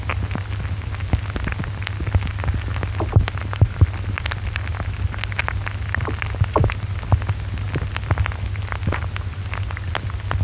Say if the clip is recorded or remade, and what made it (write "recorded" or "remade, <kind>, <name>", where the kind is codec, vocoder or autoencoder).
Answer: recorded